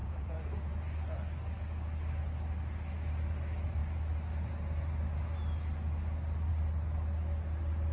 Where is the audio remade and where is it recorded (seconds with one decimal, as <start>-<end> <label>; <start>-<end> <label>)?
0.0-0.7 remade; 0.7-7.9 recorded